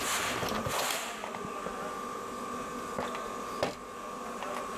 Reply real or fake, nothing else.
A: real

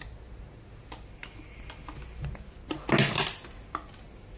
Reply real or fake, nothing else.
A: real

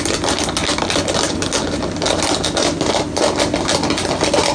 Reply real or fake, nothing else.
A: real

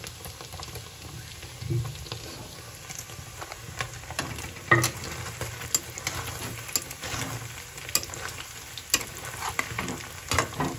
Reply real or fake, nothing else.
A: real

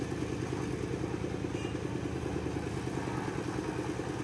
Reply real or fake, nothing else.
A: real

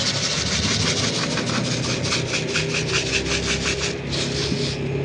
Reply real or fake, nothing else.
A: real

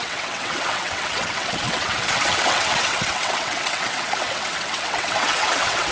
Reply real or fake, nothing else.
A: fake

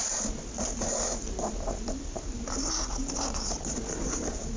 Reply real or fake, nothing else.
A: real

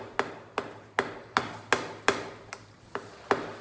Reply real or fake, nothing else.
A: real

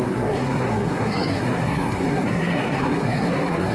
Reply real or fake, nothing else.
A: fake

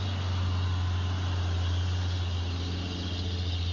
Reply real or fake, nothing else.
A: real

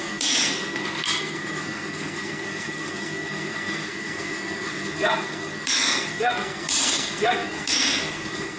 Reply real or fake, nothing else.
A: fake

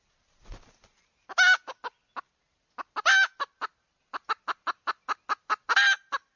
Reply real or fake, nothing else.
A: real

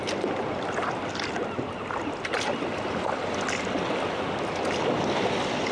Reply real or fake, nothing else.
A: real